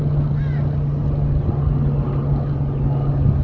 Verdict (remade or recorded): recorded